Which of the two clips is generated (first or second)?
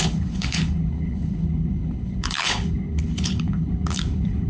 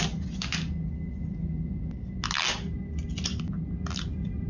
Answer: first